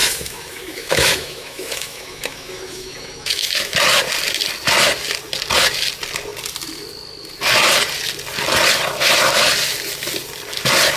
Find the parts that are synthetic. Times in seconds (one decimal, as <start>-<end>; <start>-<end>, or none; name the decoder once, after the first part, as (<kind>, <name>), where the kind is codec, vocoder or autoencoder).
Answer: 0.0-3.8 (autoencoder, DAC-VAE)